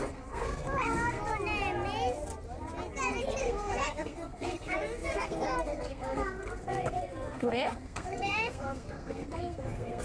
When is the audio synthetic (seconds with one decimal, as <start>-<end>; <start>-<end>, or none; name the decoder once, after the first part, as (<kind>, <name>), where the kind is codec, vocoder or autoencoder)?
0.0-1.2 (codec, SNAC); 3.4-10.0